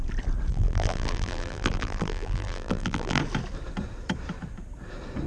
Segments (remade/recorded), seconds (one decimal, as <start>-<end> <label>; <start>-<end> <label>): 0.0-0.5 recorded; 0.5-3.2 remade; 3.2-5.3 recorded